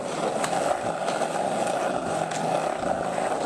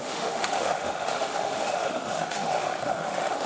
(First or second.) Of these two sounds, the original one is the first